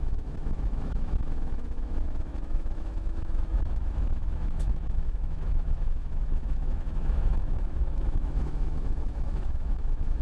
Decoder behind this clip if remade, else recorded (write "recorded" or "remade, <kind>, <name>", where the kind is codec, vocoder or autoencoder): remade, autoencoder, DAC-VAE